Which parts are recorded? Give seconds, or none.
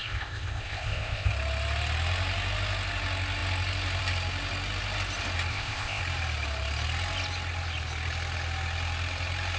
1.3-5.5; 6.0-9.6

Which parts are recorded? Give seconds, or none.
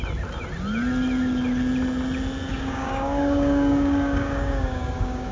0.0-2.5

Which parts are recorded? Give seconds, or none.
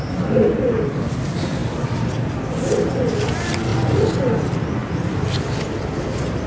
0.0-3.7; 4.2-4.8; 5.8-6.5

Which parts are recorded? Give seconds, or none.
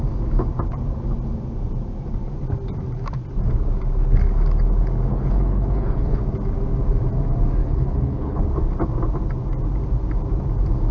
0.0-5.1; 6.2-7.6; 8.4-10.9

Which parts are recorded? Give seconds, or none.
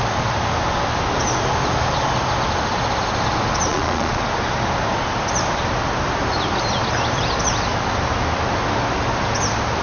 0.0-3.7; 4.2-9.8